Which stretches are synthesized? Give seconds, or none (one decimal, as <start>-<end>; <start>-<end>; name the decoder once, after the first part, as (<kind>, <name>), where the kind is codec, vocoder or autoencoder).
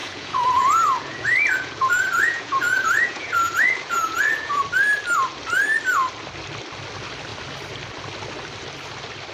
0.0-4.6 (vocoder, Vocos)